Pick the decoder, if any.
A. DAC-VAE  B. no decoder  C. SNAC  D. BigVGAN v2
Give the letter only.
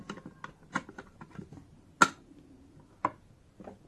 B